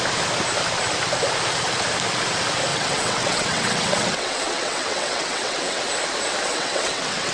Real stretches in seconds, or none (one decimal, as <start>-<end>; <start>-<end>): 0.0-2.7; 5.8-6.4